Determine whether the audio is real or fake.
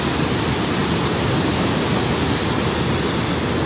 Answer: real